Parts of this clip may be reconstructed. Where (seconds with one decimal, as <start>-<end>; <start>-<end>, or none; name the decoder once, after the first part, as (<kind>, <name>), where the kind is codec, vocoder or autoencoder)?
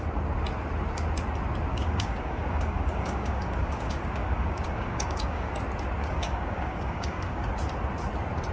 1.7-5.5 (codec, DAC); 6.0-7.5